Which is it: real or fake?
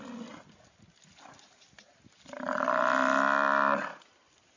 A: real